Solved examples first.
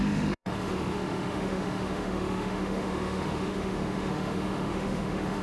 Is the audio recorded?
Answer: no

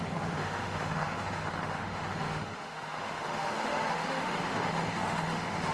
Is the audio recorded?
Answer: no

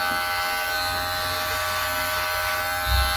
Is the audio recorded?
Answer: yes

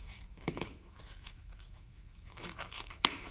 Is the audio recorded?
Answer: no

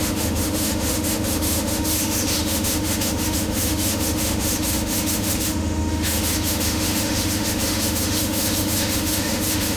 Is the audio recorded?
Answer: no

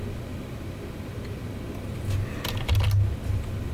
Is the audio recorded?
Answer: yes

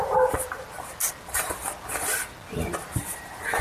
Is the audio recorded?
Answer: yes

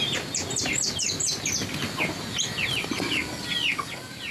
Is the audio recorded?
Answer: yes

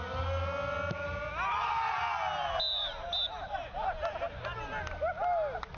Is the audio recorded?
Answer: yes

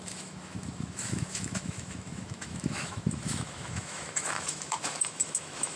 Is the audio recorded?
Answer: no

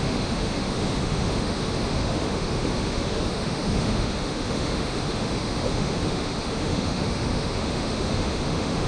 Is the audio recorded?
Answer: no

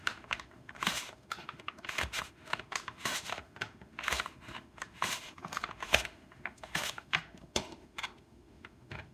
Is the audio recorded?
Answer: no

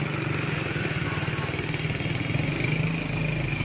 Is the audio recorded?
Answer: yes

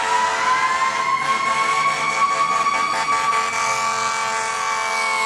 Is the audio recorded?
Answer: yes